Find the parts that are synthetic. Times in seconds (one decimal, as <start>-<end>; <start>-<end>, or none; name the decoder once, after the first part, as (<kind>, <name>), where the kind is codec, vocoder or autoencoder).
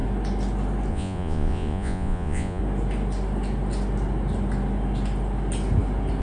0.9-2.6 (vocoder, Vocos)